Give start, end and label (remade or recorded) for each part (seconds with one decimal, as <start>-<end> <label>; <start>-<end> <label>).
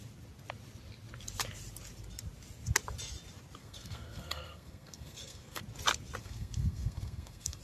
0.0-3.6 recorded; 3.6-5.6 remade; 5.6-6.2 recorded; 6.2-7.6 remade